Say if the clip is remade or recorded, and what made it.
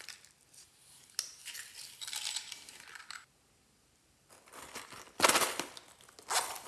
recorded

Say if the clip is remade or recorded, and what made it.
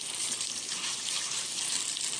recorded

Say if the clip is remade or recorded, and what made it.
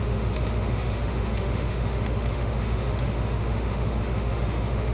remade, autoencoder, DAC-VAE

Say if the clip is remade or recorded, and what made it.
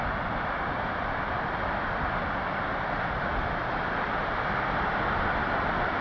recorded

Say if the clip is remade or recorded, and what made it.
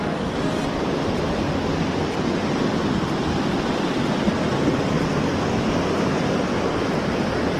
recorded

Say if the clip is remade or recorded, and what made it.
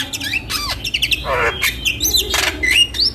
recorded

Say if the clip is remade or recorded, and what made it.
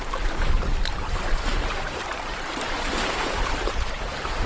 remade, vocoder, BigVGAN v2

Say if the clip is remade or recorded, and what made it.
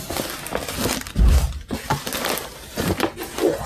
recorded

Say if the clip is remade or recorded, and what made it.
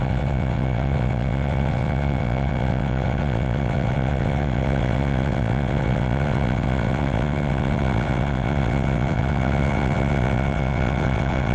remade, vocoder, WaveNeXt